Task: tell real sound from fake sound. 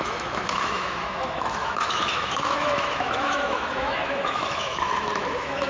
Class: fake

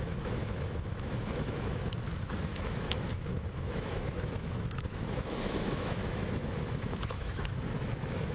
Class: fake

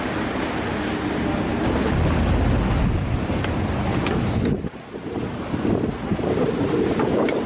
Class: real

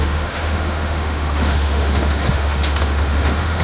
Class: fake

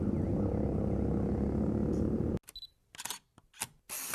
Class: real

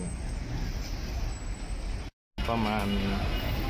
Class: real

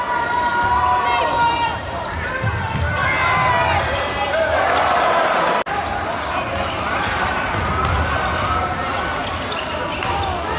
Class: real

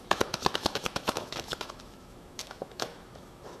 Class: fake